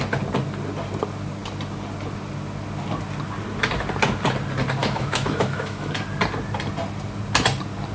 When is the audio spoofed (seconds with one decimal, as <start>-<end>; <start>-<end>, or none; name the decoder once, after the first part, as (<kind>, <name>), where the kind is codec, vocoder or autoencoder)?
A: 4.8-5.9 (autoencoder, DAC-VAE)